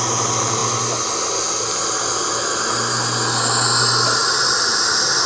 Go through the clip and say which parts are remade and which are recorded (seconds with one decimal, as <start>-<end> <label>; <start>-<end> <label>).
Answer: 0.0-5.3 recorded